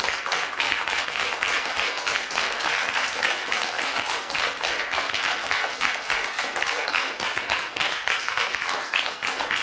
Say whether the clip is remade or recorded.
remade